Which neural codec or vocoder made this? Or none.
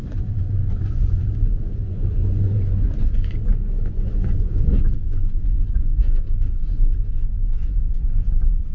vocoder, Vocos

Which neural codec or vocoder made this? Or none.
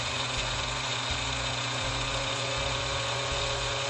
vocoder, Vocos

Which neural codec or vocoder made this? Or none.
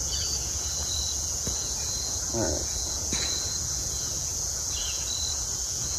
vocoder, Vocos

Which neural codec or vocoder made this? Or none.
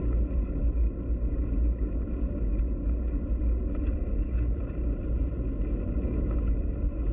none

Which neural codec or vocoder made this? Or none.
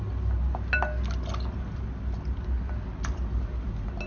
none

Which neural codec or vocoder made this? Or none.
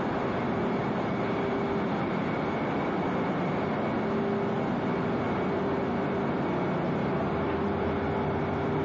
none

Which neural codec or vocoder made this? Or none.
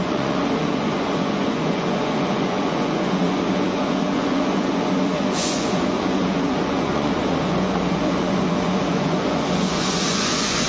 vocoder, Vocos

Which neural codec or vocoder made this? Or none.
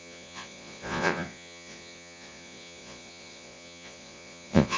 vocoder, Vocos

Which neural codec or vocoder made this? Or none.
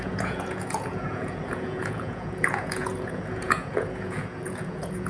vocoder, Vocos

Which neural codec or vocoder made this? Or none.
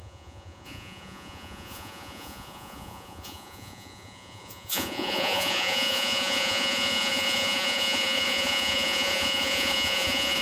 vocoder, Vocos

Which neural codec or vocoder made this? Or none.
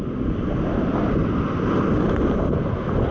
none